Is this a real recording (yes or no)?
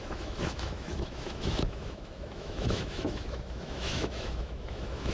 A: no